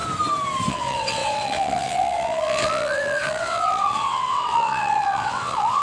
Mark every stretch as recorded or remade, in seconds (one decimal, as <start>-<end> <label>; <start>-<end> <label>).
0.0-0.7 recorded; 0.7-5.8 remade